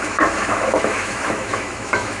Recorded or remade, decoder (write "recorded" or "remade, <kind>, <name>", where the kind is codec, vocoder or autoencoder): remade, autoencoder, DAC-VAE